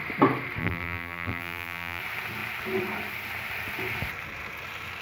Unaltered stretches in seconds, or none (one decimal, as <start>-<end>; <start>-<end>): 0.0-0.6; 2.0-5.0